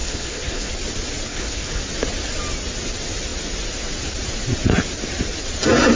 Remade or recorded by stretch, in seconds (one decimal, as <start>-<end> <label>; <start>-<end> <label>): 0.0-0.7 remade; 0.7-1.3 recorded; 1.3-1.8 remade; 1.8-6.0 recorded